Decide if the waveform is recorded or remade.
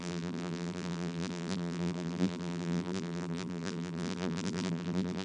remade